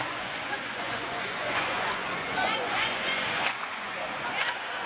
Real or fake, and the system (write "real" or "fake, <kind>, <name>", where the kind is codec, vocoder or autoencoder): fake, vocoder, Vocos